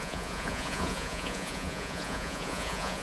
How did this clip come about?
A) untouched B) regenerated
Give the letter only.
B